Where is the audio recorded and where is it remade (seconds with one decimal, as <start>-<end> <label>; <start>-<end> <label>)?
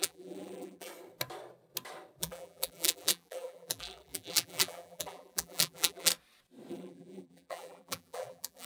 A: 0.0-0.9 remade; 0.9-2.2 recorded; 2.2-6.1 remade; 6.1-6.7 recorded; 6.7-8.6 remade